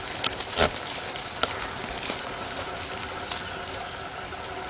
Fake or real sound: real